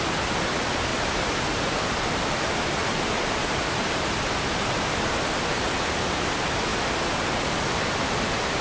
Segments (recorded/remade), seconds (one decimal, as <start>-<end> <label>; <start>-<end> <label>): 0.0-2.8 recorded; 2.8-4.3 remade; 4.3-8.6 recorded

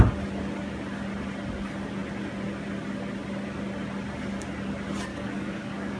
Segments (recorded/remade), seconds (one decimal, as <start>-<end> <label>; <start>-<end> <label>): 0.0-5.1 recorded; 5.1-6.0 remade

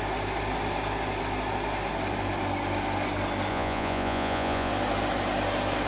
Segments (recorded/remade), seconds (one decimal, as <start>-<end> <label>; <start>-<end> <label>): 0.0-3.5 recorded; 3.5-4.7 remade; 4.7-5.9 recorded

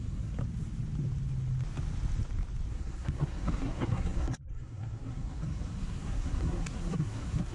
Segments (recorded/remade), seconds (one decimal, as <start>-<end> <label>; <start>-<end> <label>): 0.0-0.4 remade; 0.4-2.7 recorded; 2.7-7.5 remade

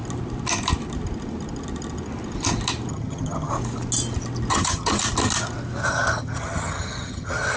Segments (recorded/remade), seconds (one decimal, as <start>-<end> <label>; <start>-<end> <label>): 0.0-2.9 recorded; 2.9-3.5 remade; 3.5-4.5 recorded; 4.5-5.0 remade; 5.0-5.8 recorded; 5.8-7.6 remade

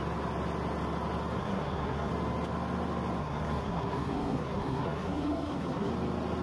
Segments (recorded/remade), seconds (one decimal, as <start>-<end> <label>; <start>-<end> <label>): 0.0-1.4 recorded; 1.4-2.1 remade; 2.1-3.2 recorded; 3.2-5.9 remade; 5.9-6.4 recorded

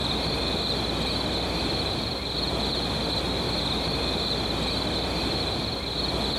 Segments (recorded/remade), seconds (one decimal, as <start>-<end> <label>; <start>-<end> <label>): 0.0-6.4 recorded